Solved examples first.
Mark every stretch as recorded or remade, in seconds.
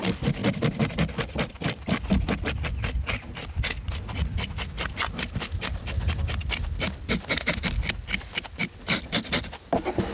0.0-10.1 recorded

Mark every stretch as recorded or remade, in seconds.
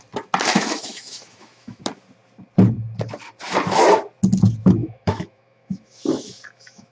0.0-0.5 recorded; 0.5-1.8 remade; 1.8-4.8 recorded; 4.8-6.9 remade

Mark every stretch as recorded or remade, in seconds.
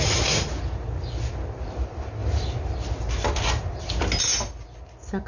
0.0-5.3 recorded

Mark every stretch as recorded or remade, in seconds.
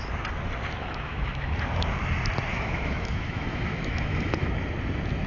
0.0-0.8 recorded; 0.8-1.5 remade; 1.5-2.5 recorded; 2.5-4.5 remade; 4.5-5.3 recorded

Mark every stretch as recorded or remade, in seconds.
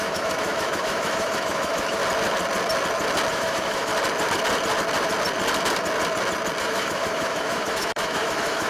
0.0-2.0 remade; 2.0-3.3 recorded; 3.3-3.9 remade; 3.9-6.6 recorded; 6.6-8.7 remade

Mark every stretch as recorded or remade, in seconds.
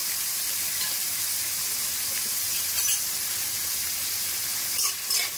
0.0-5.4 recorded